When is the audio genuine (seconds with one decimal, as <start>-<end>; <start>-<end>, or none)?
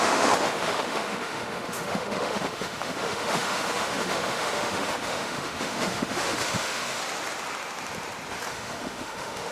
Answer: 7.0-8.5